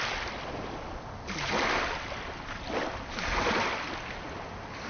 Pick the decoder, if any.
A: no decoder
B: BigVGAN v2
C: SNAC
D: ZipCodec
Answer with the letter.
A